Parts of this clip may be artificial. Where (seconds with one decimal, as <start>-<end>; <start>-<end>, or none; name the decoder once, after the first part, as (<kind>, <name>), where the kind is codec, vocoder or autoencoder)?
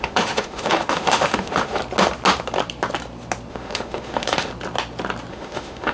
0.0-1.8 (autoencoder, DAC-VAE); 3.5-4.5; 5.3-5.9